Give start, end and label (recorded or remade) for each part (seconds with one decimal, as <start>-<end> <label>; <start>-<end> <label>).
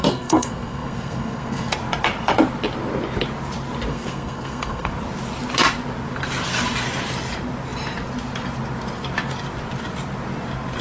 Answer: 0.0-1.7 remade; 1.7-3.9 recorded; 3.9-4.9 remade; 4.9-10.8 recorded